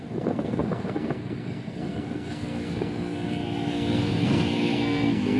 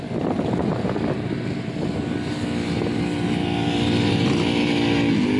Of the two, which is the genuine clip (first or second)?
second